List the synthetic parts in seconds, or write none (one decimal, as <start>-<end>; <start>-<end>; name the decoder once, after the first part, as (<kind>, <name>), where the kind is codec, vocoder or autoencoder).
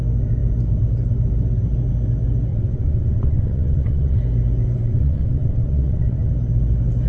2.5-4.2 (vocoder, WaveNeXt); 4.8-6.3